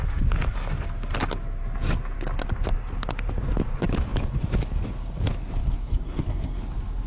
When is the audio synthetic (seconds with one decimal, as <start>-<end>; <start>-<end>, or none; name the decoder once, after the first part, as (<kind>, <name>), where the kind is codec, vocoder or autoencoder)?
5.8-6.6 (codec, SNAC)